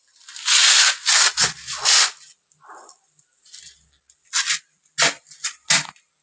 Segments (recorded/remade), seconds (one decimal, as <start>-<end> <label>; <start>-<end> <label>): 0.0-6.2 recorded